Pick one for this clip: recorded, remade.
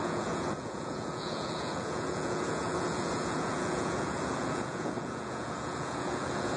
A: remade